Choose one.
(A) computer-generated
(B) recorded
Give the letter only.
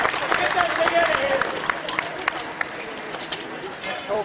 A